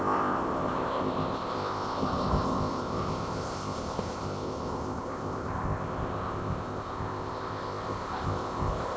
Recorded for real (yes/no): no